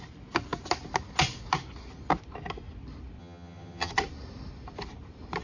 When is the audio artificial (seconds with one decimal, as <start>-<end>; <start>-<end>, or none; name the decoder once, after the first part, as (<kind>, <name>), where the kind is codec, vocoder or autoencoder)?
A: 3.2-3.9 (vocoder, HiFi-GAN)

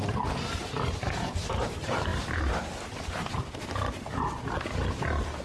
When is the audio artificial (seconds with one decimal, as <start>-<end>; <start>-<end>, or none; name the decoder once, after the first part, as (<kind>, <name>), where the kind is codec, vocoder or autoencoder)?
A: none

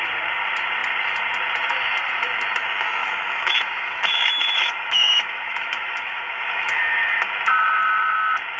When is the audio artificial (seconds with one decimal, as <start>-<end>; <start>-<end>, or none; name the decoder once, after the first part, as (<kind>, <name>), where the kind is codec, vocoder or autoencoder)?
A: 3.0-7.3 (autoencoder, DAC-VAE)

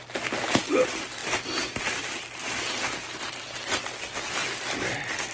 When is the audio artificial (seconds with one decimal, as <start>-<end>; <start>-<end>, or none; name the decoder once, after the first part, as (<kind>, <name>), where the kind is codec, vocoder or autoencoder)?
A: none

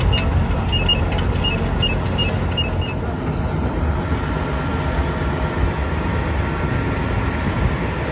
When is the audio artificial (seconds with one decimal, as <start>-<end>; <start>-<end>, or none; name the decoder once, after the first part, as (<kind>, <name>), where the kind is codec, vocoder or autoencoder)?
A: none